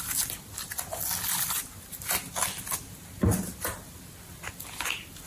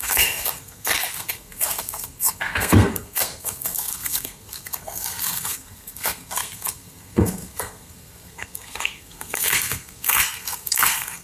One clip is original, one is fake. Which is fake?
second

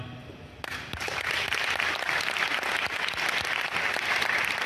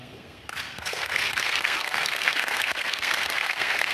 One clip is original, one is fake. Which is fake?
second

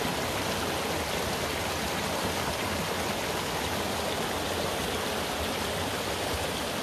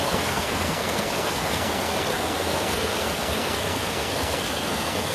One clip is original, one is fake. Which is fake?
second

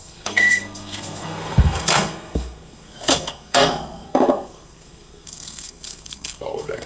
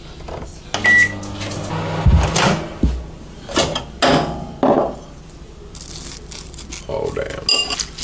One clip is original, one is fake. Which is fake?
first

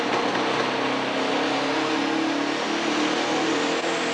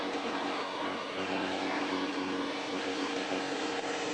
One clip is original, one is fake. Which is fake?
second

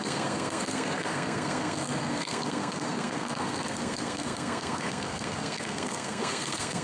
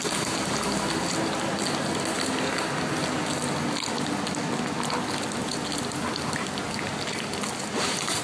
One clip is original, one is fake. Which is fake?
first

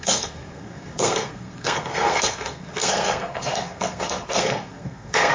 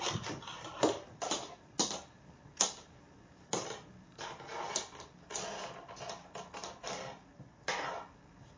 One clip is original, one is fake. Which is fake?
first